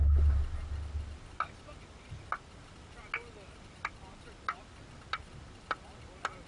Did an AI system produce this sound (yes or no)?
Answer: no